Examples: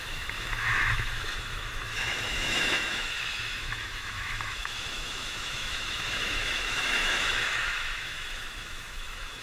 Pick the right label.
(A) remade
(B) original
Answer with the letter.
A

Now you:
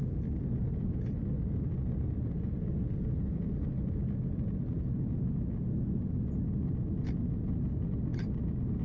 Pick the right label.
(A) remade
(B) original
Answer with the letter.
B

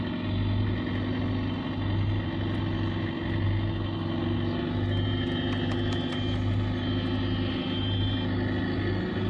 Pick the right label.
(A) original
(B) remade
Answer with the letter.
A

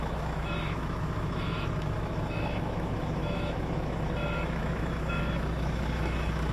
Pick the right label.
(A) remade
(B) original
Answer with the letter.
A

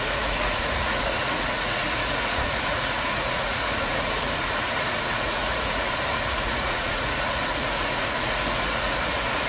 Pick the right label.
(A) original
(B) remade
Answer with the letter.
B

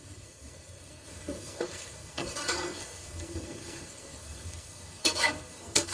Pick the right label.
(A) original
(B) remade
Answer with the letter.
B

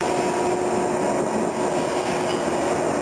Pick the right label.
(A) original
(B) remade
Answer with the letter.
A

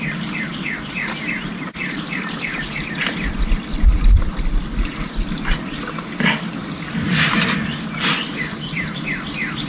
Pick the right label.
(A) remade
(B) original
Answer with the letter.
B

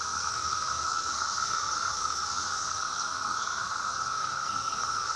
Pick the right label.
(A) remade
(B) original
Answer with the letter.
A